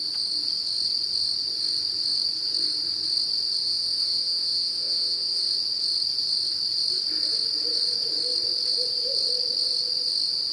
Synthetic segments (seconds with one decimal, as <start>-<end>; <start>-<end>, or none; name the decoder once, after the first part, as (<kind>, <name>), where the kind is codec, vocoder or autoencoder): 3.6-5.4 (vocoder, WaveNeXt)